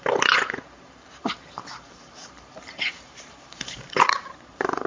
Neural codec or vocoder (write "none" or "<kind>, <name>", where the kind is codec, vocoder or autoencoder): vocoder, BigVGAN v2